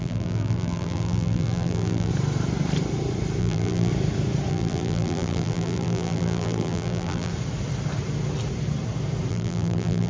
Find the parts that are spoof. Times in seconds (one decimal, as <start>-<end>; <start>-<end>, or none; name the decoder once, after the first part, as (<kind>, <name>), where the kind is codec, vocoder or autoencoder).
0.0-2.1 (vocoder, BigVGAN v2); 3.4-3.9; 4.5-7.3; 9.3-10.1